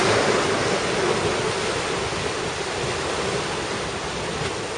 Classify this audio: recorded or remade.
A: recorded